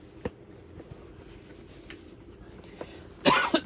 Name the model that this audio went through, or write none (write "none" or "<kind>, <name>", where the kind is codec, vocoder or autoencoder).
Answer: none